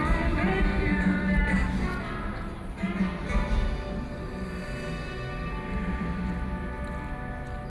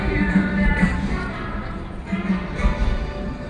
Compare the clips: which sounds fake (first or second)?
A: second